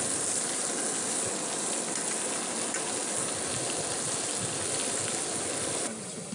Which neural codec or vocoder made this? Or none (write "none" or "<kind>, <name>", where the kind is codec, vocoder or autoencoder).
none